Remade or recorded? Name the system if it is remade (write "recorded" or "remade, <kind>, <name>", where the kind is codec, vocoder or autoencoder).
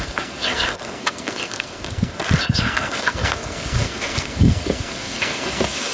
remade, codec, SNAC